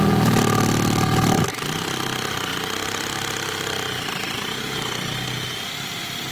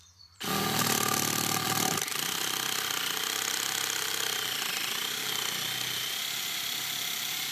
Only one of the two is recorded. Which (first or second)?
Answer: first